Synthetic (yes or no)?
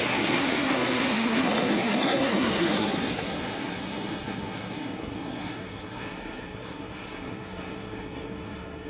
yes